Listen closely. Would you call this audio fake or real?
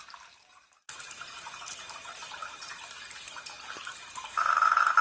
fake